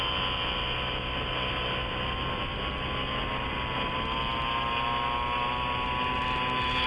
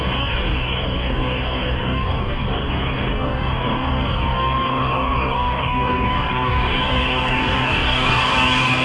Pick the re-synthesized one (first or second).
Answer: second